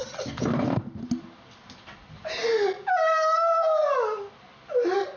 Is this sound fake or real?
real